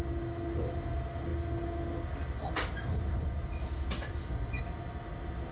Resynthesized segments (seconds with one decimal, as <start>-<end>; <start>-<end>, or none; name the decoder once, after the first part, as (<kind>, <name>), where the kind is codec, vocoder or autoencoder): none